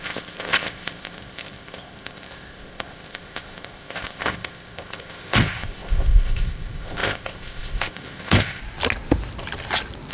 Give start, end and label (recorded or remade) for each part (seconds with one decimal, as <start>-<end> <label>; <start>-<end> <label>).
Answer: 0.0-8.6 remade; 8.6-10.1 recorded